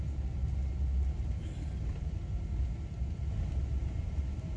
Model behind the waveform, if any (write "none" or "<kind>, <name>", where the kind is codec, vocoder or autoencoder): none